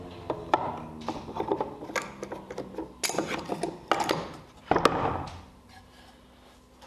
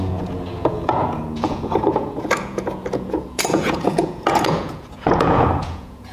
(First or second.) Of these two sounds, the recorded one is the first